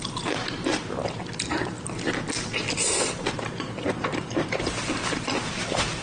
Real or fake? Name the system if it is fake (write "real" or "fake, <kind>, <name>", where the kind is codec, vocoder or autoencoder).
real